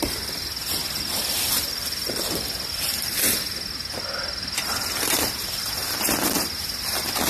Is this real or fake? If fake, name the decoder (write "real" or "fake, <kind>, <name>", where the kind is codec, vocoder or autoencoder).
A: real